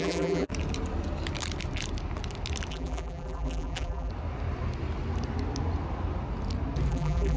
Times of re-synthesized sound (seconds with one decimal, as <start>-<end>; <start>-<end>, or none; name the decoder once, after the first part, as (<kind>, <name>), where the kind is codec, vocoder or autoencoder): 0.0-0.5 (vocoder, BigVGAN v2); 2.7-4.1; 6.9-7.4